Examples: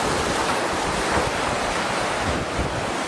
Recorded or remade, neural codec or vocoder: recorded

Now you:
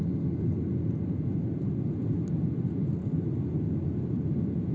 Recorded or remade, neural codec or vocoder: recorded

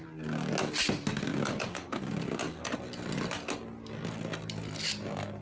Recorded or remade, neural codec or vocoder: recorded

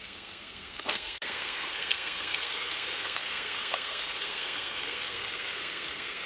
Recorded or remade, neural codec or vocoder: remade, codec, SNAC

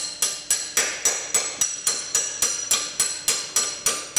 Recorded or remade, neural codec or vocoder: recorded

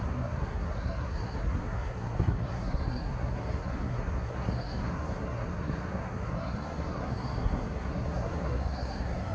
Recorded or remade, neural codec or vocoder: remade, codec, SNAC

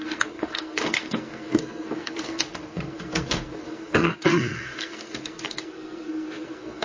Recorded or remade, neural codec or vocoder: remade, codec, SNAC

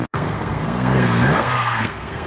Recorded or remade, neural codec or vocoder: remade, codec, SNAC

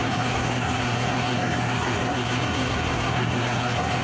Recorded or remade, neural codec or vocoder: remade, codec, SNAC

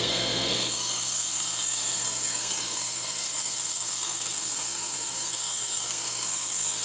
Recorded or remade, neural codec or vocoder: remade, codec, SNAC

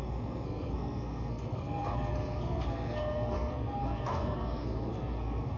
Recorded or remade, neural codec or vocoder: remade, codec, SNAC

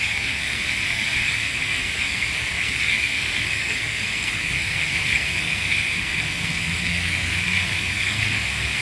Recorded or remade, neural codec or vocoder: remade, codec, SNAC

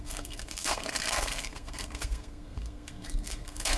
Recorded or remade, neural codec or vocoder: remade, codec, SNAC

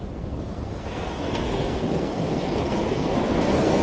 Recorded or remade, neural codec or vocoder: remade, codec, SNAC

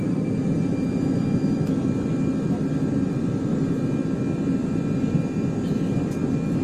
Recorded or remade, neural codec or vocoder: recorded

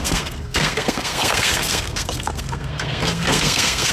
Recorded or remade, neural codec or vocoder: remade, codec, SNAC